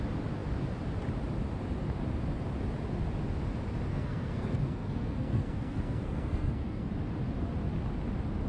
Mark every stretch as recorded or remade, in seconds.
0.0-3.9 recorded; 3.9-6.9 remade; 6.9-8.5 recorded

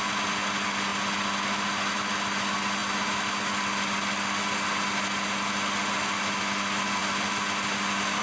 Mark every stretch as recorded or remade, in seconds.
0.0-8.2 recorded

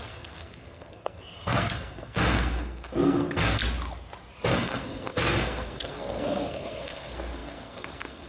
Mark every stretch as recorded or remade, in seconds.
0.0-3.6 remade; 3.6-4.5 recorded; 4.5-8.3 remade